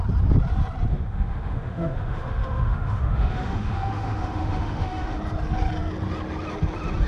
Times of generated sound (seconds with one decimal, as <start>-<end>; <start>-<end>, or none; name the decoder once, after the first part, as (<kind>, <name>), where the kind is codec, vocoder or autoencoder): 0.9-5.2 (autoencoder, DAC-VAE)